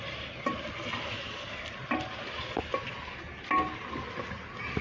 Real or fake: real